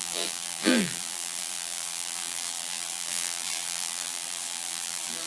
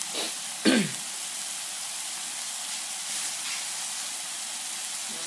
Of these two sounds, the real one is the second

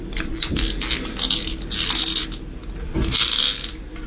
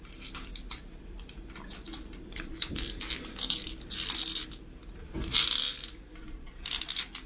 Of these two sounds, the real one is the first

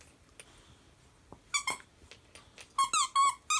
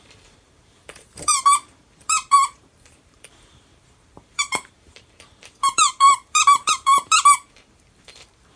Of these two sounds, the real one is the first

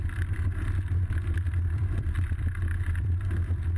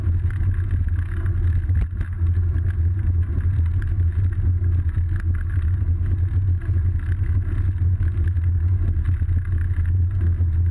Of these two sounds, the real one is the second